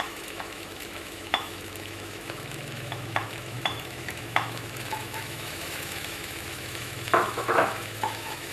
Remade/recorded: remade